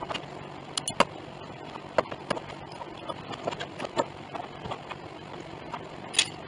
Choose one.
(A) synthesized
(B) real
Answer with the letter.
B